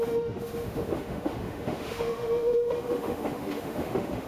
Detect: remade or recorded remade